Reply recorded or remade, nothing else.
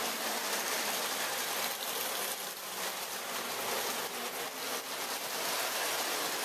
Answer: recorded